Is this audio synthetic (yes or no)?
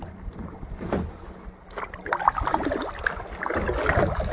no